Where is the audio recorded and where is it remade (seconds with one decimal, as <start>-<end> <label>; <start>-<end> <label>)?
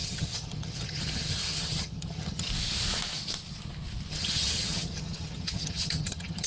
0.0-2.5 remade; 2.5-4.1 recorded; 4.1-6.5 remade